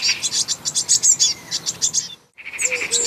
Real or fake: real